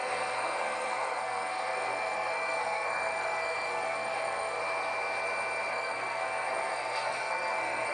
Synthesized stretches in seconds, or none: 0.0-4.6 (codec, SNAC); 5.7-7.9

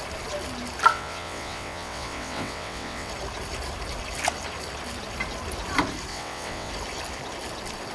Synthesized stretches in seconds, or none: 0.9-3.1 (vocoder, WaveNeXt); 6.1-6.7

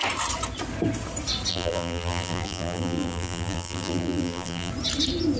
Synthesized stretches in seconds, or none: 1.5-4.7 (vocoder, BigVGAN v2)